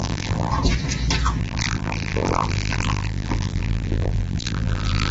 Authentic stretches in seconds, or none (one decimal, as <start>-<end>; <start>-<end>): 0.5-1.4